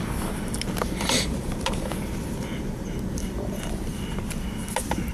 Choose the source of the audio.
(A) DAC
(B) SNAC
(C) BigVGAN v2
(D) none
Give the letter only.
D